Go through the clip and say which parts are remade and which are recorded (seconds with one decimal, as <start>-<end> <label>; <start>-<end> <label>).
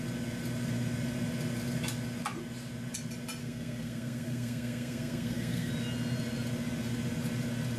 0.0-3.4 recorded; 3.4-5.7 remade; 5.7-7.8 recorded